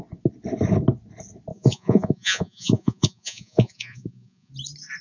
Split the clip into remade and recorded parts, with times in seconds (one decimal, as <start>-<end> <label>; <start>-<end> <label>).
0.0-1.5 recorded; 1.5-4.5 remade; 4.5-5.0 recorded